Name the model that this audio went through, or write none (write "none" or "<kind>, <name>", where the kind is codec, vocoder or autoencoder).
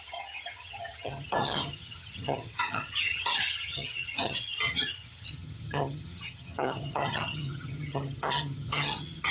vocoder, HiFi-GAN